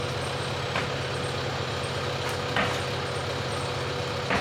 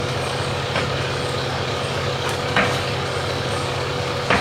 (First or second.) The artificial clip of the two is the second